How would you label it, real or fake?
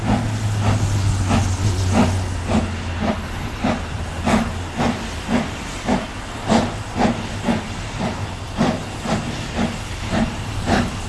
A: real